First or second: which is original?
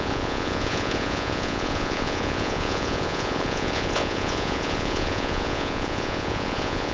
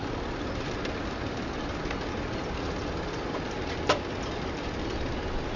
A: second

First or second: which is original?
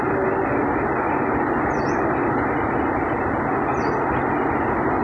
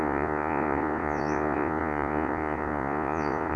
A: first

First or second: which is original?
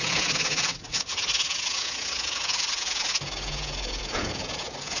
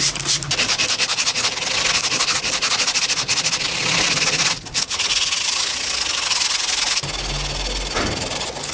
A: second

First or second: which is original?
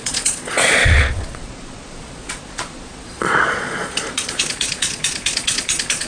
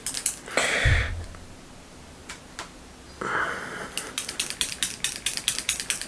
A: second